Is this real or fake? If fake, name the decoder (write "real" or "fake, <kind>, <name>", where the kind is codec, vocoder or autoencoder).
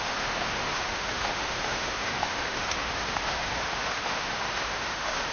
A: fake, autoencoder, DAC-VAE